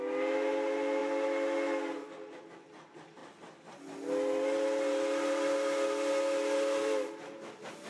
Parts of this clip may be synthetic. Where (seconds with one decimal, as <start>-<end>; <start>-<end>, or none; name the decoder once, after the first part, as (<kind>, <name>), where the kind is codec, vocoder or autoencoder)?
none